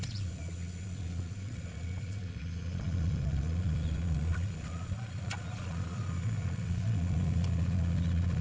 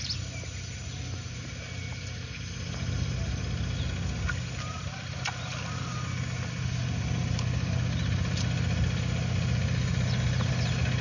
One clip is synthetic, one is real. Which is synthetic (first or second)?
first